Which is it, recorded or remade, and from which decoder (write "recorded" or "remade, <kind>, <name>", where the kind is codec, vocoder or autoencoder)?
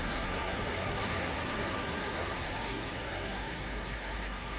remade, codec, SNAC